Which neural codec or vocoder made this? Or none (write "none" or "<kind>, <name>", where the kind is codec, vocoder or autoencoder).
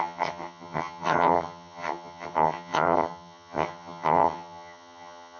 vocoder, HiFi-GAN